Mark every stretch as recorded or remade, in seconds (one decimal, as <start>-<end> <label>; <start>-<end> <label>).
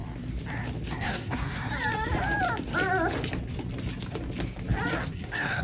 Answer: 0.0-0.9 recorded; 0.9-1.7 remade; 1.7-5.1 recorded; 5.1-5.6 remade